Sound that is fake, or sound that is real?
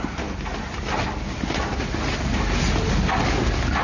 real